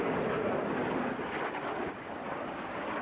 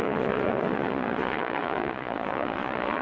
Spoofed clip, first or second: second